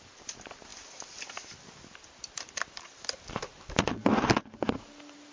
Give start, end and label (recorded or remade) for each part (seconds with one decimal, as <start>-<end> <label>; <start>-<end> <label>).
0.0-5.3 recorded